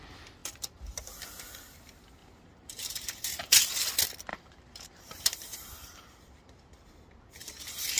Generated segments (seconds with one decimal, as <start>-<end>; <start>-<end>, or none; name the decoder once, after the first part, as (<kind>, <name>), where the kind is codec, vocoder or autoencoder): 2.2-3.7 (vocoder, BigVGAN v2); 4.3-6.9; 7.4-8.0

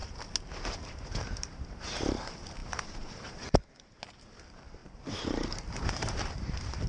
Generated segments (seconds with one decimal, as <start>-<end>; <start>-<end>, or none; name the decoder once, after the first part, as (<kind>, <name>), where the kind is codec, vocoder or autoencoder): 0.9-6.9 (vocoder, BigVGAN v2)

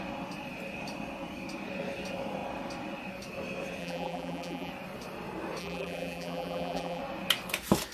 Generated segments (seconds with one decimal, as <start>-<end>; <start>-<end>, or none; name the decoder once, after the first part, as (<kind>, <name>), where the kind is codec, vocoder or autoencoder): 3.8-4.7 (vocoder, BigVGAN v2); 5.6-7.0

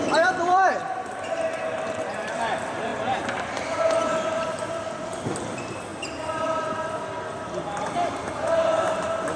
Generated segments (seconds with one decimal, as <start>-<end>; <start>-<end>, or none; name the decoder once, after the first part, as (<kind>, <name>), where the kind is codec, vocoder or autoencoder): 0.0-2.9 (vocoder, BigVGAN v2); 3.4-5.9

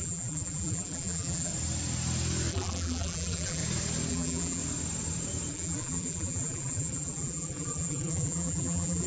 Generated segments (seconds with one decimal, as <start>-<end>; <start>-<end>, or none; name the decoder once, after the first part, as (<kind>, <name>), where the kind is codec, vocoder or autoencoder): 0.0-1.5 (vocoder, BigVGAN v2); 2.5-3.6; 4.1-4.6; 5.5-9.1

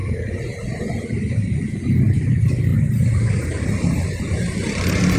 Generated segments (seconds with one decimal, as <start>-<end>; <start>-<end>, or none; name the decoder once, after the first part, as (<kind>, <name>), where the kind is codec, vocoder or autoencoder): 0.0-5.2 (vocoder, BigVGAN v2)

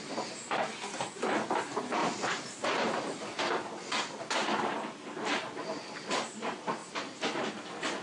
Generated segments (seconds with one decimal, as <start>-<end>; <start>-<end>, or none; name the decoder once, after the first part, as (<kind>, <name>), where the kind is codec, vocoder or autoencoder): 2.0-3.4 (vocoder, BigVGAN v2)